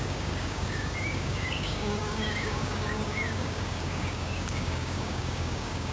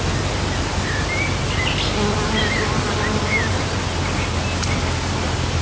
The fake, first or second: first